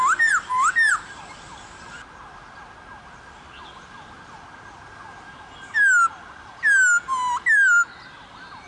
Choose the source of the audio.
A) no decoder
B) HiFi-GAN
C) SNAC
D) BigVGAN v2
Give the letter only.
A